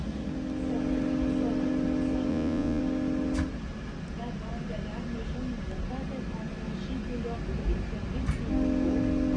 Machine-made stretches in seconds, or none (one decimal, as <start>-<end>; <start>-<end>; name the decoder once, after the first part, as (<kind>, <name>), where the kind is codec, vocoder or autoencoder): 2.3-2.8 (vocoder, Vocos)